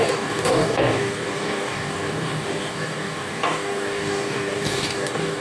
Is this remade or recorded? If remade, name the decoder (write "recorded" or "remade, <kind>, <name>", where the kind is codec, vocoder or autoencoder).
remade, codec, DAC